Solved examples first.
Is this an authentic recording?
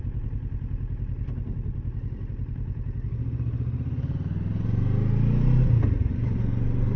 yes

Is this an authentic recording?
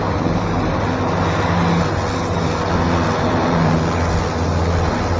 yes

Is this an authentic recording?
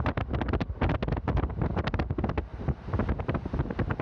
yes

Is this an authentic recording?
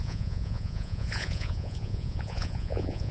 no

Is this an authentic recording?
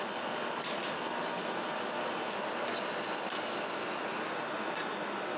yes